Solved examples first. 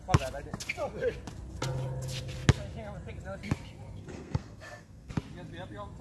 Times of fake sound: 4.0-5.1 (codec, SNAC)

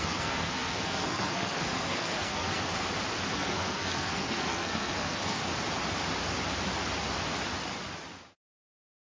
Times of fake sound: 0.0-2.7 (codec, SNAC); 3.3-5.4

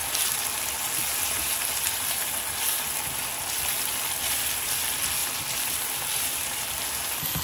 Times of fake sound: 3.7-4.8 (vocoder, BigVGAN v2); 5.2-5.8

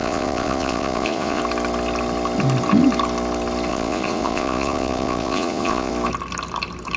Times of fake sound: 0.0-1.4 (vocoder, Vocos); 3.7-5.9

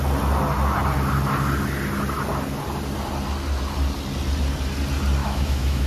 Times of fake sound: 5.2-5.9 (autoencoder, DAC-VAE)

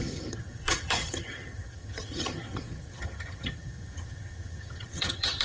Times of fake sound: 0.0-5.4 (vocoder, HiFi-GAN)

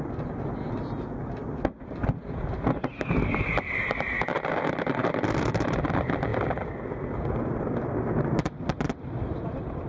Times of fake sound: none

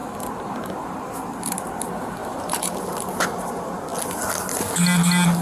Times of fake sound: 2.2-2.7 (vocoder, BigVGAN v2)